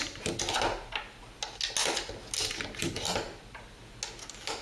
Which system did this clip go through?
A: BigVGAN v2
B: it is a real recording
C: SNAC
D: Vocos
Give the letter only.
B